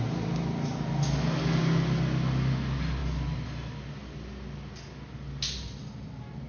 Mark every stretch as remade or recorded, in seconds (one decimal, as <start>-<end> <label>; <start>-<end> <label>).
0.0-6.5 recorded

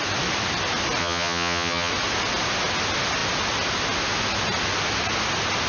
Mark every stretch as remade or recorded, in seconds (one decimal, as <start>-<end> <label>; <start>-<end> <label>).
0.0-1.0 recorded; 1.0-1.9 remade; 1.9-5.7 recorded